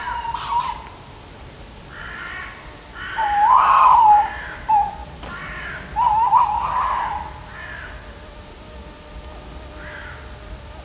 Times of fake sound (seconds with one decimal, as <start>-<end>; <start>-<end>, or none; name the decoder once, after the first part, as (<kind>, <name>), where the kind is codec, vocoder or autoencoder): none